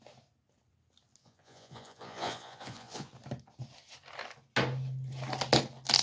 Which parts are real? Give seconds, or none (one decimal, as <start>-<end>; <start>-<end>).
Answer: 0.0-1.2; 3.1-6.0